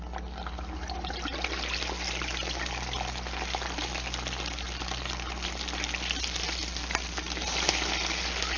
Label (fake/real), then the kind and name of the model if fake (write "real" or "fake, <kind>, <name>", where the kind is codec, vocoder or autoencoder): real